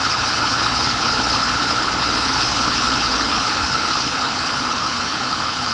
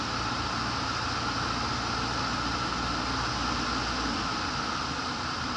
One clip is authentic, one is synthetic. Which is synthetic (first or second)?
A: first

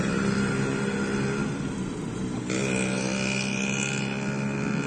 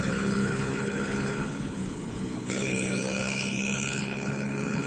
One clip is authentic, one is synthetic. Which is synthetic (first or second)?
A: second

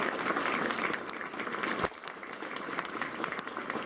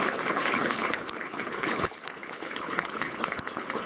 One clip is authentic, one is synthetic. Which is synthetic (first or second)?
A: second